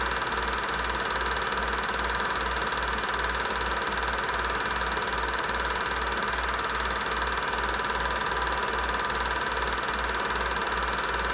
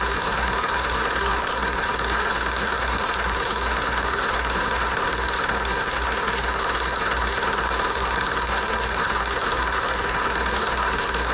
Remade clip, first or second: second